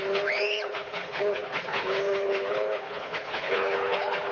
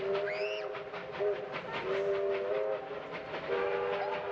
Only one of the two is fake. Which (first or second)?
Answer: first